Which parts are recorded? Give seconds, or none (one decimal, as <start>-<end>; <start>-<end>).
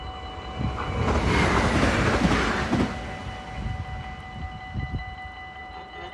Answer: 0.0-6.1